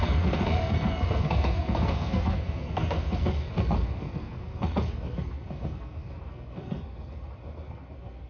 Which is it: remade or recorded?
remade